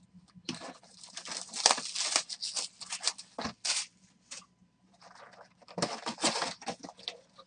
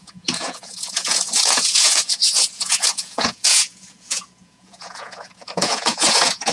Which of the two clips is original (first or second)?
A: first